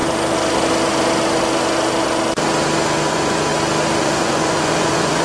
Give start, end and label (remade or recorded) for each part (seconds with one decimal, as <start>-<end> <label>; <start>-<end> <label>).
0.0-3.1 recorded; 3.1-3.5 remade; 3.5-4.0 recorded; 4.0-5.2 remade